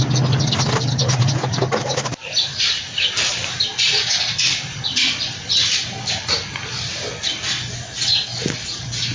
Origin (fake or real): real